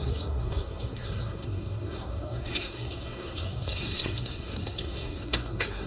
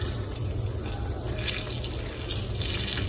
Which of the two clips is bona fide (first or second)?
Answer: second